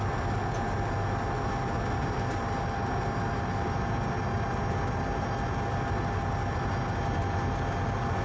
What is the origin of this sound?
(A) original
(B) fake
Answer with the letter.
A